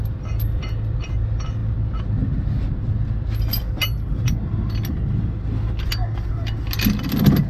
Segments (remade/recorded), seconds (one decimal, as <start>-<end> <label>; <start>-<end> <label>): 0.0-7.5 recorded